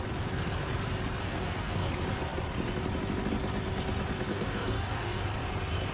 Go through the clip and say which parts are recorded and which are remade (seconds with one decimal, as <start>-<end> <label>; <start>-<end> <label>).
0.0-1.2 recorded; 1.2-1.9 remade; 1.9-4.3 recorded; 4.3-5.2 remade; 5.2-5.9 recorded